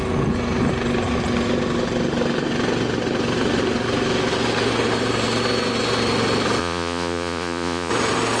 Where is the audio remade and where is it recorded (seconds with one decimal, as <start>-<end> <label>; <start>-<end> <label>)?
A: 0.0-6.6 recorded; 6.6-7.9 remade; 7.9-8.4 recorded